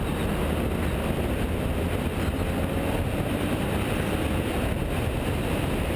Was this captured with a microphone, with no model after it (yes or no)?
yes